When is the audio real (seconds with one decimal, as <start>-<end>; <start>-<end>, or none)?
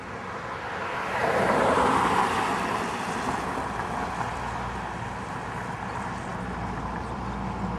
0.0-1.2; 1.9-6.3; 7.2-7.8